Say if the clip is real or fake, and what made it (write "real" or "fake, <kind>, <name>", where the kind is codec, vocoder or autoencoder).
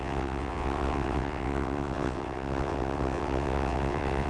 fake, vocoder, WaveNeXt